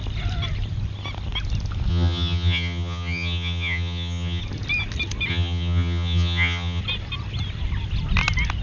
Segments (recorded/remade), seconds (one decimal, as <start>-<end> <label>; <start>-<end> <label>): 0.0-1.9 recorded; 1.9-4.4 remade; 4.4-5.3 recorded; 5.3-6.8 remade; 6.8-8.6 recorded